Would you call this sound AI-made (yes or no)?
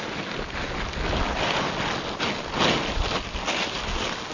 no